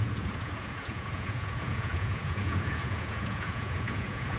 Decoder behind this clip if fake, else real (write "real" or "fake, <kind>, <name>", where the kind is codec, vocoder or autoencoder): fake, vocoder, Vocos